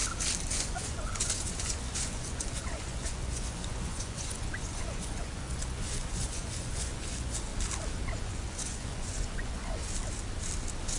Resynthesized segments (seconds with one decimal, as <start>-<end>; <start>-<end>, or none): 0.5-7.5; 8.2-9.8